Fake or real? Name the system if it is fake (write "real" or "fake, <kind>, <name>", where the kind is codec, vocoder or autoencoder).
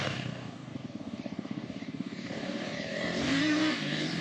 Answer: fake, codec, DAC